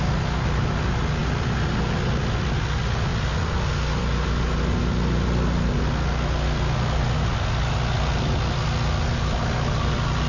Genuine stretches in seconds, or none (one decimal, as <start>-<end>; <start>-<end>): 0.0-10.3